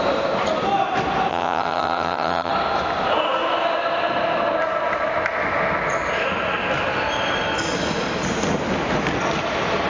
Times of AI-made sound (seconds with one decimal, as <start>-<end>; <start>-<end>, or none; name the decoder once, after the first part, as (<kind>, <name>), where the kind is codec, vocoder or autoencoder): 1.3-2.5 (vocoder, HiFi-GAN)